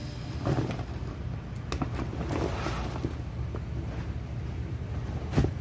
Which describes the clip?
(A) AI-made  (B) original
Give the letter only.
B